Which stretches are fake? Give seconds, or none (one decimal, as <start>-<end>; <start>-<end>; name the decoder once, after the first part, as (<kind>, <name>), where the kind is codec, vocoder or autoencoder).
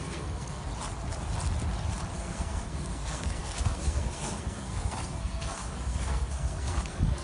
0.0-0.7 (codec, SNAC); 2.1-7.2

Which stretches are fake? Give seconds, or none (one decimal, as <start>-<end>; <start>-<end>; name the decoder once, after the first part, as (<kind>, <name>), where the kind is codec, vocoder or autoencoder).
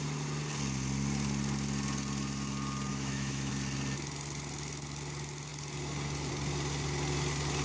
2.9-3.5 (autoencoder, DAC-VAE)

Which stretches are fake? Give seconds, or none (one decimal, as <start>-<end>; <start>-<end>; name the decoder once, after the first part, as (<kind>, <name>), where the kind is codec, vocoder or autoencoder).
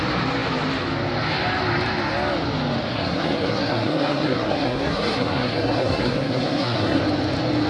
2.9-7.0 (codec, SNAC)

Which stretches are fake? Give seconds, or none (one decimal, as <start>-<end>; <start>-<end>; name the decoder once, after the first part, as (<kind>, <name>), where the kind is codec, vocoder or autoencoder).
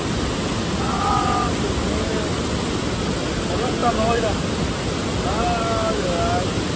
none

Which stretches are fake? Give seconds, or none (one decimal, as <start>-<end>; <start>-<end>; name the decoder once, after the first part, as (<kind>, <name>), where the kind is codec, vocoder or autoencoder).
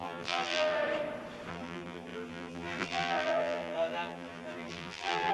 0.0-0.8 (vocoder, BigVGAN v2); 1.5-5.3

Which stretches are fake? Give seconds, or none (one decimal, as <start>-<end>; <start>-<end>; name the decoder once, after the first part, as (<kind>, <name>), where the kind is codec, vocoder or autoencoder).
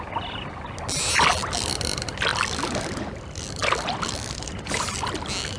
none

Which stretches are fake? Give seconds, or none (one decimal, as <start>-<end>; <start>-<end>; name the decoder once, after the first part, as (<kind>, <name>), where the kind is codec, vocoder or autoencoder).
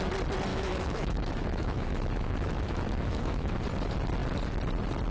0.5-3.6 (autoencoder, DAC-VAE)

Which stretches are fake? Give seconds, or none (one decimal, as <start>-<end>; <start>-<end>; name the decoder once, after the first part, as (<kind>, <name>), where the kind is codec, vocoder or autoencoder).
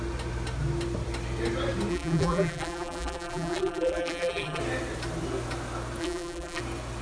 1.9-4.6 (vocoder, BigVGAN v2); 6.0-6.6